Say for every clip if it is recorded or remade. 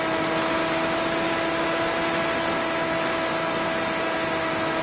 recorded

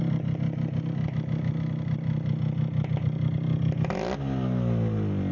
recorded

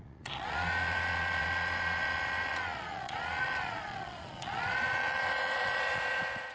remade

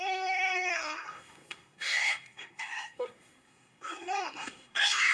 remade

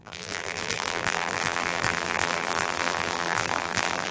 remade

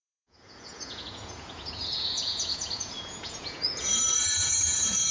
remade